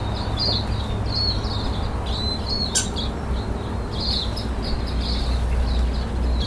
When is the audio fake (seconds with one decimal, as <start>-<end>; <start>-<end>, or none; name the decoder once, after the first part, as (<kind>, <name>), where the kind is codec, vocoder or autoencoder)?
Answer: none